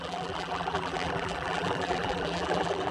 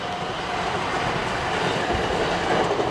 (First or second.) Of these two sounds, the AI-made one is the first